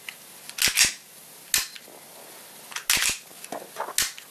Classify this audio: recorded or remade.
recorded